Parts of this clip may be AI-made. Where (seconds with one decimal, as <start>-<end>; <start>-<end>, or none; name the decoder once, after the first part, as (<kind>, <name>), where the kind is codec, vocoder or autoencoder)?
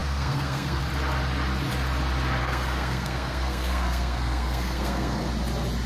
0.0-0.8 (codec, SNAC); 2.4-5.3